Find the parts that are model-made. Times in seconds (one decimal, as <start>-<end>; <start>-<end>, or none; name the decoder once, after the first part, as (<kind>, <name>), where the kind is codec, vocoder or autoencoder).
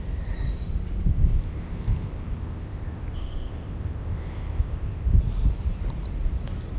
1.1-5.2 (codec, ZipCodec)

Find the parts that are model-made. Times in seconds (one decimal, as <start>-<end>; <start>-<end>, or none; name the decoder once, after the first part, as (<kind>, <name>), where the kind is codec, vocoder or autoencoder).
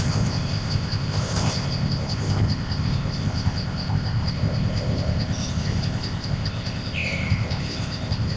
0.0-8.4 (codec, ZipCodec)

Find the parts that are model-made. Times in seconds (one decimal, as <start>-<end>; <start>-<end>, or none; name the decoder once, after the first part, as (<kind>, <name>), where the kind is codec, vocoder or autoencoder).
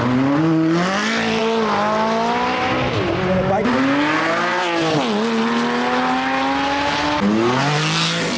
none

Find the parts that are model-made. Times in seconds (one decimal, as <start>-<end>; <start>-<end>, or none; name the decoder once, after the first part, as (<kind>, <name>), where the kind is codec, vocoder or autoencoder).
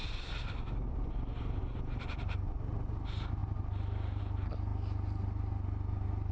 none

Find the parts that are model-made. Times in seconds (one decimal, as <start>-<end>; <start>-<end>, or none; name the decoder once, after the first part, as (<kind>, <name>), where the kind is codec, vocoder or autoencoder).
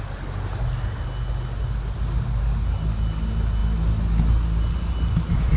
none